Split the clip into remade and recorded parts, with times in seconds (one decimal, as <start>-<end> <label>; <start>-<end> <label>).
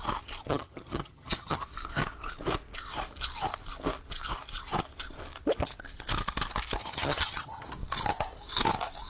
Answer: 0.0-0.4 recorded; 0.4-1.6 remade; 1.6-6.8 recorded; 6.8-7.7 remade; 7.7-9.1 recorded